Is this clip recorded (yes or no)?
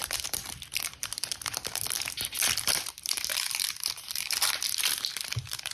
no